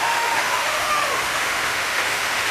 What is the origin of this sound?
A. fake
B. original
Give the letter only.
A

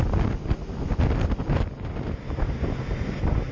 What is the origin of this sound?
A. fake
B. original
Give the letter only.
B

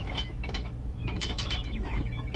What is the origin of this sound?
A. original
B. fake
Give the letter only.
B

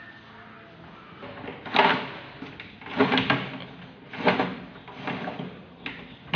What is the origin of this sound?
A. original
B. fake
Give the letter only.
A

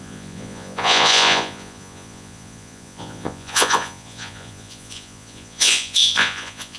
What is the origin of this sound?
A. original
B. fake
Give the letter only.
B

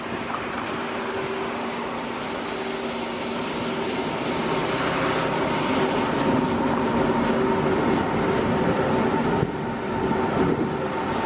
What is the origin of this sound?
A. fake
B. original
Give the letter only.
B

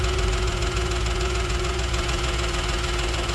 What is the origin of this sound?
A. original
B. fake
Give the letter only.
B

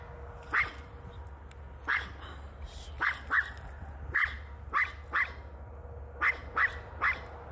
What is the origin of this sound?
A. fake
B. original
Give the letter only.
B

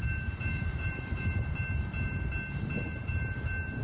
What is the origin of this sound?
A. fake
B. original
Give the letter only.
A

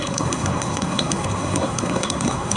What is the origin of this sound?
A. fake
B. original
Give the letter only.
A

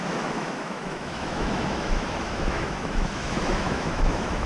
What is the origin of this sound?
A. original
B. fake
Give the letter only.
B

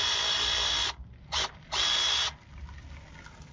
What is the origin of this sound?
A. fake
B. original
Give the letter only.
B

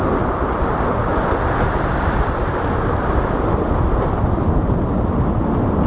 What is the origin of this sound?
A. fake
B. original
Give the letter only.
B